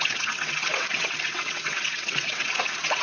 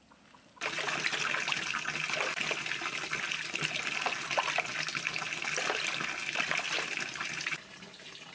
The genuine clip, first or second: second